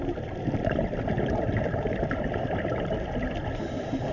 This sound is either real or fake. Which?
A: fake